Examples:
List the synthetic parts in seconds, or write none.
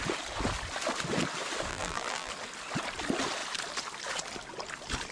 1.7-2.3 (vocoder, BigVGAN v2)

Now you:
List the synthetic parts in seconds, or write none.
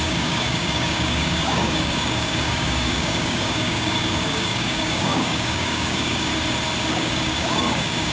0.0-6.3 (codec, DAC); 6.9-8.1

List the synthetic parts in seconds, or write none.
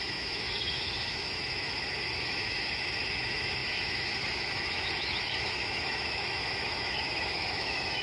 0.0-8.0 (autoencoder, DAC-VAE)